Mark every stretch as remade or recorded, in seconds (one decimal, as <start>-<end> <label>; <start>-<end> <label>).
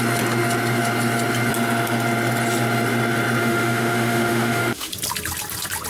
0.0-3.4 recorded; 3.4-4.9 remade; 4.9-5.9 recorded